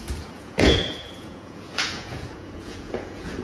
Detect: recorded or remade remade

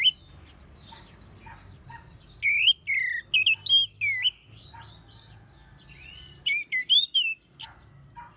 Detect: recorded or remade recorded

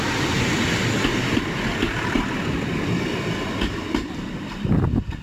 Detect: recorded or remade recorded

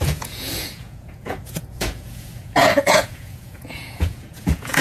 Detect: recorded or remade remade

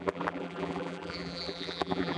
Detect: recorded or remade remade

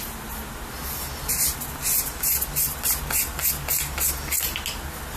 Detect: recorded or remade recorded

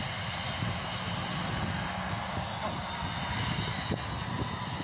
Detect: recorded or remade recorded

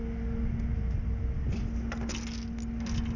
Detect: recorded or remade recorded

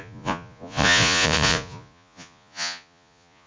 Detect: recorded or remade remade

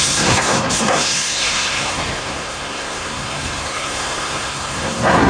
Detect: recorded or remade remade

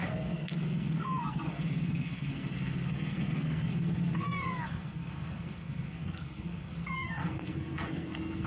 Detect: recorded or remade remade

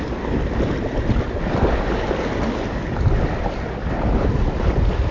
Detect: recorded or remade recorded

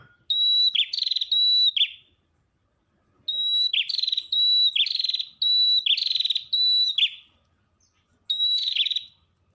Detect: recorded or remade recorded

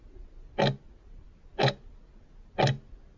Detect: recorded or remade recorded